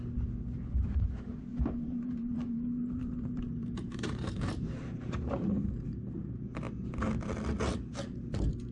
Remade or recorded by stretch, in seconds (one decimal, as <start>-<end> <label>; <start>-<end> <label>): 0.0-1.5 recorded; 1.5-5.7 remade; 5.7-8.7 recorded